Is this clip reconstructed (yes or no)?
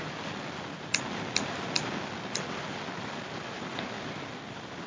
no